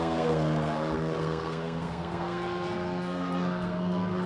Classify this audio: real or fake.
fake